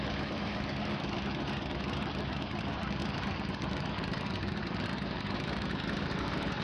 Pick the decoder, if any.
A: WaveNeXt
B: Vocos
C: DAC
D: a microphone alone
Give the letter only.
C